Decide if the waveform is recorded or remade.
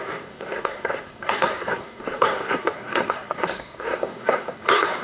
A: remade